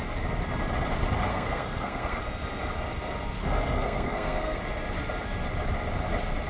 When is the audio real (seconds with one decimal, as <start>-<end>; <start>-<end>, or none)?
0.0-1.3; 2.2-3.4; 4.6-6.5